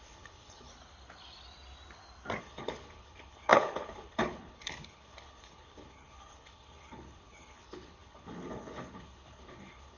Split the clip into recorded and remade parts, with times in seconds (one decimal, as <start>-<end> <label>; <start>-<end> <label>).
0.0-0.7 remade; 0.7-2.4 recorded; 2.4-10.0 remade